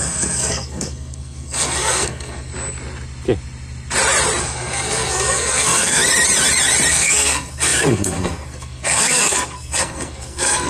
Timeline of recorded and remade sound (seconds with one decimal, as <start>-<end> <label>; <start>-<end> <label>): 0.0-2.5 remade; 2.5-4.4 recorded; 4.4-6.0 remade; 6.0-6.9 recorded; 6.9-10.7 remade